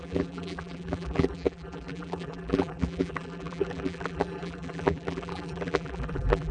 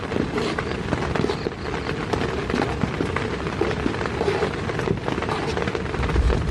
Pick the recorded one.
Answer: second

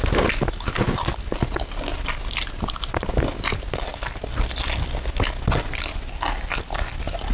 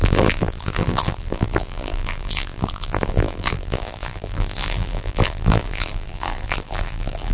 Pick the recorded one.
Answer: first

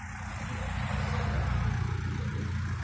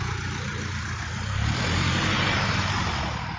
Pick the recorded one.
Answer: first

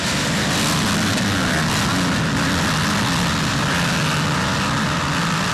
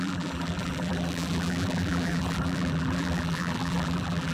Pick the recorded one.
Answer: first